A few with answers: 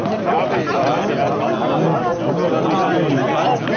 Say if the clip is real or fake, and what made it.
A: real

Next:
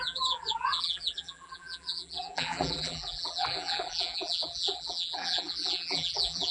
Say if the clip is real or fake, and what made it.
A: fake, vocoder, BigVGAN v2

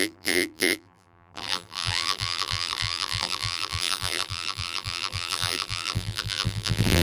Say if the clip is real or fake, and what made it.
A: fake, vocoder, BigVGAN v2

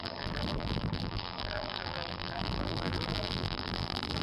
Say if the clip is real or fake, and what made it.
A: fake, vocoder, BigVGAN v2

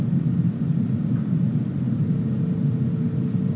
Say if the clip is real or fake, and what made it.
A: real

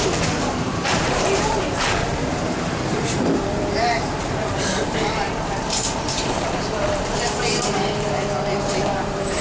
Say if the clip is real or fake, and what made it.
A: fake, vocoder, BigVGAN v2